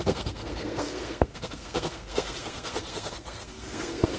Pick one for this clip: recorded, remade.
remade